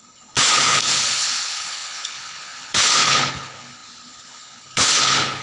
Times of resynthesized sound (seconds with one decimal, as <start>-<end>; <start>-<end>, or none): 0.0-5.4